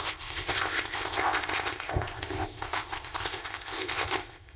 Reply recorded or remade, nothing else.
remade